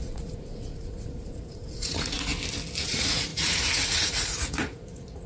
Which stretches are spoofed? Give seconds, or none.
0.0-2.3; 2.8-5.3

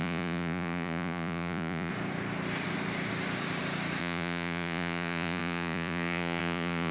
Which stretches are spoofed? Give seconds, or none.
0.0-1.9; 4.0-6.9